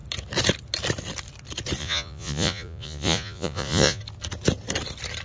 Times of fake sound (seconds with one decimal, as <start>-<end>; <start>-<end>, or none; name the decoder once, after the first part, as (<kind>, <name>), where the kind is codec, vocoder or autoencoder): 1.8-4.0 (vocoder, Vocos)